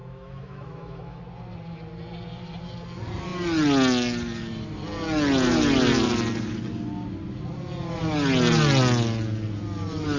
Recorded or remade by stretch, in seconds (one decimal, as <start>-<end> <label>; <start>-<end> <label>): 0.0-1.2 remade; 1.2-10.2 recorded